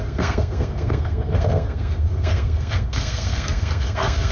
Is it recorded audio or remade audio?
remade